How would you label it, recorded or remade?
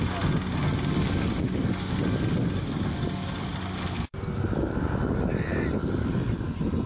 recorded